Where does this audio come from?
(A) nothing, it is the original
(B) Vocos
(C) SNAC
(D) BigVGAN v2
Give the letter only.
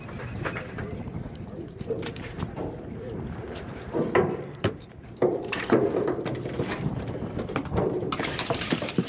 D